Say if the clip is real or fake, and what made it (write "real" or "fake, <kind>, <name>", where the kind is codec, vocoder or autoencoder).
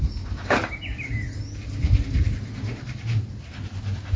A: real